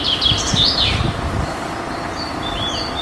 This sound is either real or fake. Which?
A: real